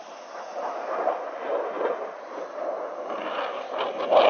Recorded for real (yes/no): yes